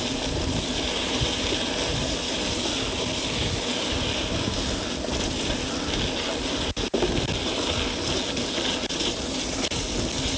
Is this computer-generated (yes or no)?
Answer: no